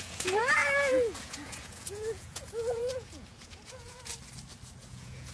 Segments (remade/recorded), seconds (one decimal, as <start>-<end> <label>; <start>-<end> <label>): 0.0-4.1 remade; 4.1-4.8 recorded; 4.8-5.3 remade

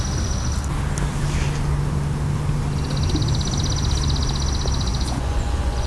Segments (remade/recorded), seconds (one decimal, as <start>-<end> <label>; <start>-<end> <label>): 0.0-4.9 recorded; 4.9-5.9 remade

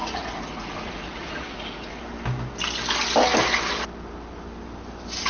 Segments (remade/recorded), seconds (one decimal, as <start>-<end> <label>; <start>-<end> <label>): 0.0-2.0 remade; 2.0-5.3 recorded

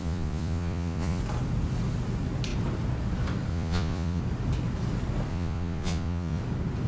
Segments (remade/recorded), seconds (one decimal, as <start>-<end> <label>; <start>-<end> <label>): 0.0-1.2 remade; 1.2-3.5 recorded; 3.5-4.2 remade; 4.2-5.3 recorded; 5.3-6.4 remade; 6.4-6.9 recorded

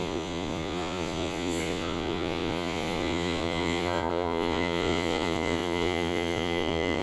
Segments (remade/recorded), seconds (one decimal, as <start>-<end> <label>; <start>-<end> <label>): 0.0-7.0 remade

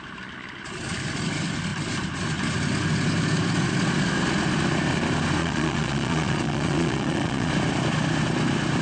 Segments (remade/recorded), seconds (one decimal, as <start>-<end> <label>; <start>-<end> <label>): 0.0-5.4 recorded; 5.4-7.5 remade; 7.5-8.8 recorded